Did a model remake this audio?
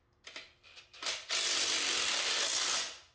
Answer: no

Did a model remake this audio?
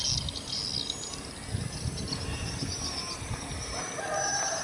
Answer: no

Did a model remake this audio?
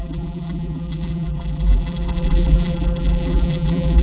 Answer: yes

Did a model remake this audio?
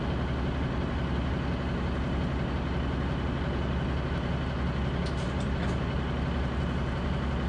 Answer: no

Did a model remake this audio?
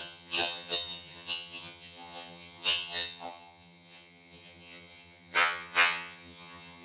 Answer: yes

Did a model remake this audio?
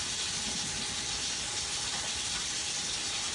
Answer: no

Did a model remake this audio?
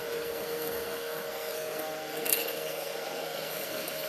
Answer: yes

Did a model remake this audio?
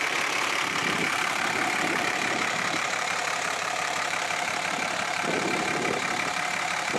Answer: yes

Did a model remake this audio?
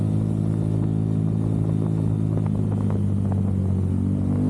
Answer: no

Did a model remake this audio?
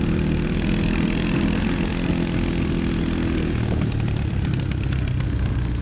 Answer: no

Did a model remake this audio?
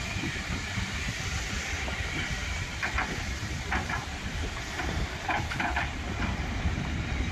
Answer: yes